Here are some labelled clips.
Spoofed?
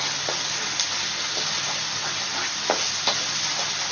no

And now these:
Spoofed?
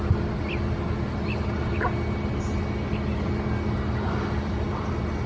no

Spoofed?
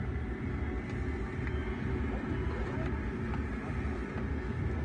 no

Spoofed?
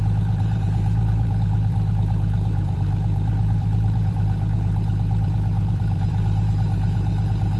yes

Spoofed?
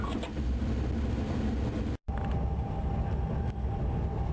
no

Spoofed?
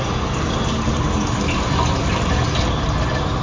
no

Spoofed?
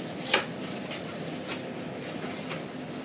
no